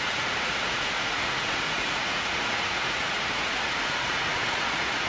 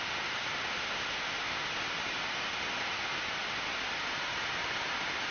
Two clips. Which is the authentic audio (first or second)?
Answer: second